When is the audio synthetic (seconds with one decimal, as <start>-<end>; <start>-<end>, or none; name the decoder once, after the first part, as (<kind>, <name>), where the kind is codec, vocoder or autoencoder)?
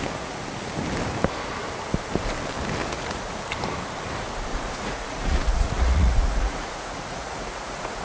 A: 2.8-3.4 (vocoder, Vocos); 4.5-8.0